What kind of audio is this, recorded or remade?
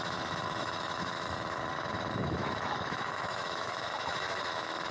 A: remade